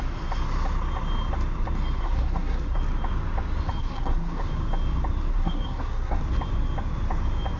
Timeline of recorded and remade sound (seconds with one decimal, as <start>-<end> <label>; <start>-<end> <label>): 0.0-2.0 recorded; 2.0-2.8 remade; 2.8-3.8 recorded; 3.8-4.4 remade; 4.4-5.3 recorded; 5.3-6.2 remade; 6.2-7.6 recorded